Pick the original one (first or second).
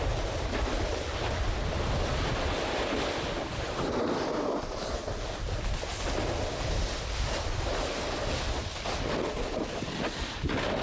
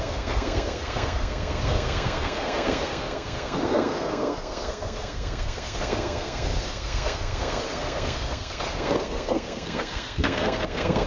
first